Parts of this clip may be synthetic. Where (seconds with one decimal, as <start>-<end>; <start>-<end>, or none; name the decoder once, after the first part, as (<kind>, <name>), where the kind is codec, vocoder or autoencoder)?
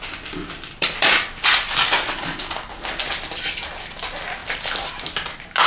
0.4-1.7 (vocoder, BigVGAN v2); 4.4-4.9